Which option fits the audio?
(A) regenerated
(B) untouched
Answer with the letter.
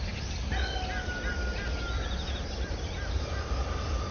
B